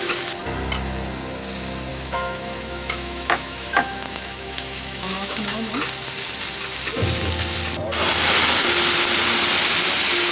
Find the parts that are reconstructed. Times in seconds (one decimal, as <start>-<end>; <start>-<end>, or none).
1.9-5.7